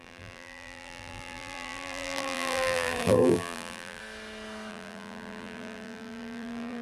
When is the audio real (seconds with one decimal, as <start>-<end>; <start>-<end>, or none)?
4.0-4.7